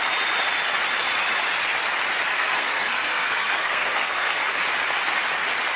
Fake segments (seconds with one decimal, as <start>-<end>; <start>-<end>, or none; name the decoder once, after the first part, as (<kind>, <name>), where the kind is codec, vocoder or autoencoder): 2.3-4.5 (codec, SNAC)